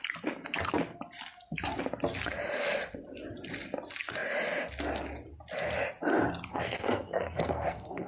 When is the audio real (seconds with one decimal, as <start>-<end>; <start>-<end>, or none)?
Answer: 0.0-6.5